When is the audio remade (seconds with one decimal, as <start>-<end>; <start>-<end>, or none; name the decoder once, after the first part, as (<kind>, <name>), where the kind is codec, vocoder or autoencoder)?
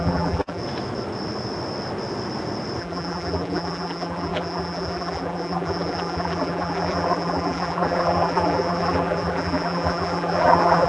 0.0-0.6 (vocoder, BigVGAN v2); 2.8-10.9